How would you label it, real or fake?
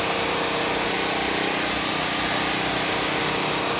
real